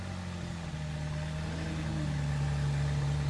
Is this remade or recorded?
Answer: recorded